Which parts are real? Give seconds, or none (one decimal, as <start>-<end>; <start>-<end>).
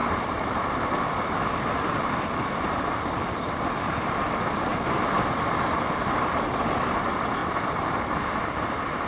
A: 4.2-4.7; 5.2-7.4